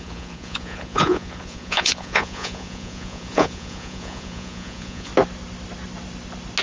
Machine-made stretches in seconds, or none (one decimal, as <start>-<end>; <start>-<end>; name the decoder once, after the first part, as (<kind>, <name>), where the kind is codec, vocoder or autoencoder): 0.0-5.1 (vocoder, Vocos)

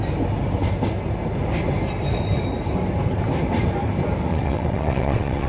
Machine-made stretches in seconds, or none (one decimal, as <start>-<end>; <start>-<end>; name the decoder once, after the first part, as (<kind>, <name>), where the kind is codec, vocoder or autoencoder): 4.3-5.5 (vocoder, WaveNeXt)

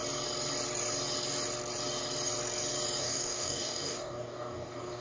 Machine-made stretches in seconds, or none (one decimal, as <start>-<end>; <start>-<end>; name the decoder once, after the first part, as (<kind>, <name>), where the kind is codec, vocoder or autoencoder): 3.0-5.0 (codec, DAC)

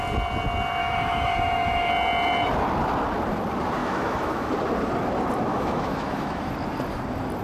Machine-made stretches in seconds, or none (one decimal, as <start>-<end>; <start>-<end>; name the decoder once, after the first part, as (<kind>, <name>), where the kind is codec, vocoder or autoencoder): 0.8-1.9 (autoencoder, DAC-VAE); 3.8-4.5; 5.5-6.5